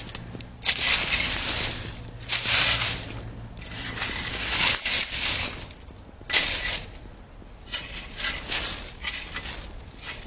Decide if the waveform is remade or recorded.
recorded